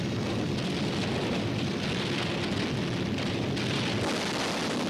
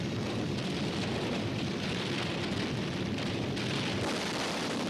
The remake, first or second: second